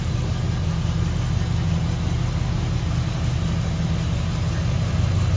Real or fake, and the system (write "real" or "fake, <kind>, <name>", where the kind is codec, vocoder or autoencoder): real